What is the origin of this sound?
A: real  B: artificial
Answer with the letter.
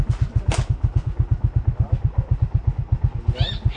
A